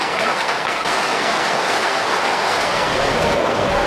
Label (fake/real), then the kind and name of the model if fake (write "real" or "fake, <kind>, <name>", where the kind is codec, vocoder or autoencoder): fake, codec, SNAC